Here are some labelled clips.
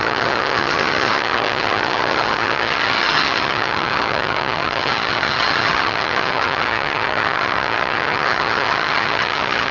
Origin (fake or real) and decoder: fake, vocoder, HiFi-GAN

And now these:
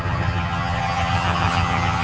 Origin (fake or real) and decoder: fake, vocoder, HiFi-GAN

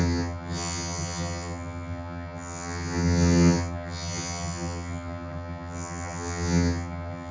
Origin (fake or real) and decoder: fake, vocoder, HiFi-GAN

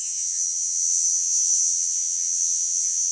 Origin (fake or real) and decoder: fake, vocoder, HiFi-GAN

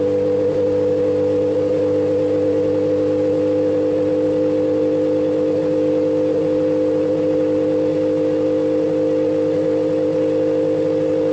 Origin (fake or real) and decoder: real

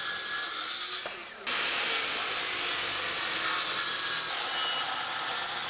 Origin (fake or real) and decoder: real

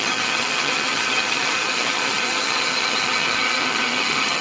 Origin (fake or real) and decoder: fake, vocoder, HiFi-GAN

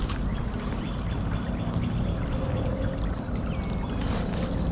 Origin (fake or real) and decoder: real